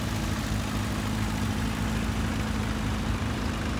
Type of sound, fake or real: real